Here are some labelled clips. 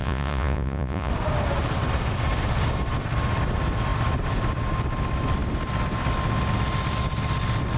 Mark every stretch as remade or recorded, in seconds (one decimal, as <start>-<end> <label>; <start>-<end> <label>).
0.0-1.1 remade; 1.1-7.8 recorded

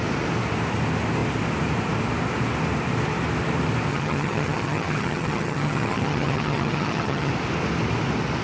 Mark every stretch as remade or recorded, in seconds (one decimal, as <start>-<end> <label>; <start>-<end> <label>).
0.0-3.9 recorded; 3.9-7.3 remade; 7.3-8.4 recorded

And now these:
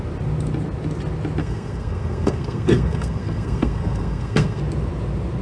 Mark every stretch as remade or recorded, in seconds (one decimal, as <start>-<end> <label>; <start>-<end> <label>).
0.0-1.4 recorded; 1.4-4.6 remade; 4.6-5.4 recorded

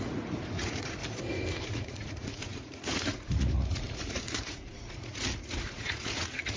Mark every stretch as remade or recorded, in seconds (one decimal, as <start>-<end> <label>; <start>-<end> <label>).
0.0-1.0 remade; 1.0-1.5 recorded; 1.5-6.6 remade

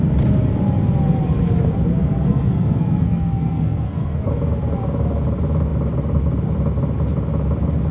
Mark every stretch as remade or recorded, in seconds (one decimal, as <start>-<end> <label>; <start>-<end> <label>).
0.0-2.0 recorded; 2.0-4.3 remade; 4.3-7.9 recorded